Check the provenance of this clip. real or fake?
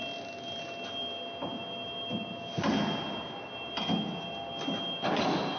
real